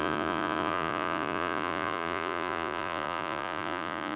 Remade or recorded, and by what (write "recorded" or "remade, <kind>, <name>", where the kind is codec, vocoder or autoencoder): remade, vocoder, Vocos